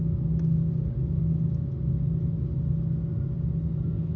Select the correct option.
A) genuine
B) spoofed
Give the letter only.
A